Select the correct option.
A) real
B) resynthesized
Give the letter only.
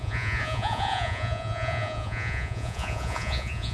B